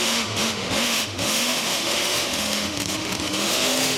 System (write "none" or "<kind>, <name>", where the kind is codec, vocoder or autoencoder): autoencoder, DAC-VAE